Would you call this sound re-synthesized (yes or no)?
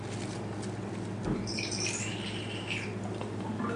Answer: no